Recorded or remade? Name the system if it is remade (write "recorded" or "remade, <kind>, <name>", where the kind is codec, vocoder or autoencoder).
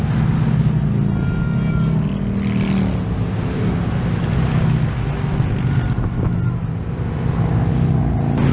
recorded